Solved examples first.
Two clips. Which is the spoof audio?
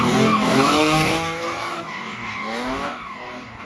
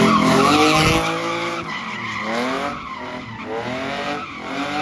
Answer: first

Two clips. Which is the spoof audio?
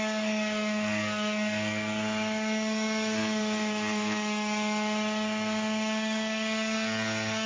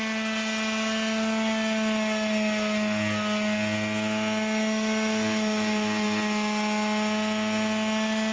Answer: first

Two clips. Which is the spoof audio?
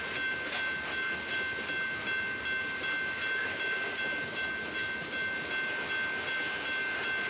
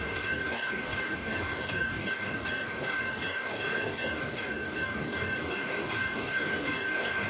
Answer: second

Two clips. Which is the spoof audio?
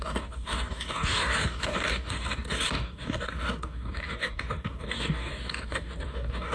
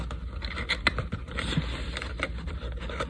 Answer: first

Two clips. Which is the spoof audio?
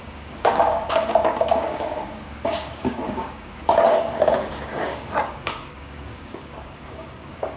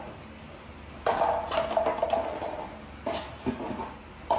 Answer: first